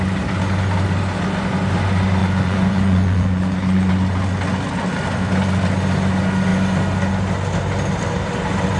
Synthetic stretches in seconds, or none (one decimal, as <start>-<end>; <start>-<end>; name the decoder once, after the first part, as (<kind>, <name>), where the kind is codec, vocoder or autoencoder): 2.2-3.9 (vocoder, Vocos)